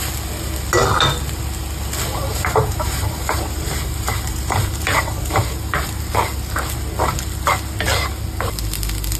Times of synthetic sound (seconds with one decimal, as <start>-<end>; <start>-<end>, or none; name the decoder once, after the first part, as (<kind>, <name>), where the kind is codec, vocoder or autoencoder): 2.3-6.1 (vocoder, BigVGAN v2)